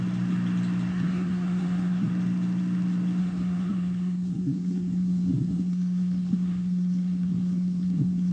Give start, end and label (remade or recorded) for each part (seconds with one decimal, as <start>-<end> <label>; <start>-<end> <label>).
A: 0.0-0.9 recorded; 0.9-2.1 remade; 2.1-3.2 recorded; 3.2-8.3 remade